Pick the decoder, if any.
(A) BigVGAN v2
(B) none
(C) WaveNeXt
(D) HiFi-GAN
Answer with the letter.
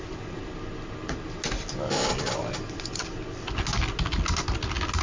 B